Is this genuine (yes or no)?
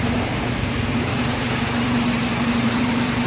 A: no